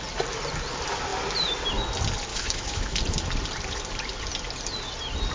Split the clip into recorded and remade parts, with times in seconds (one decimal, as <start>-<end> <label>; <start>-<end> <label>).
0.0-2.3 recorded; 2.3-3.0 remade; 3.0-5.3 recorded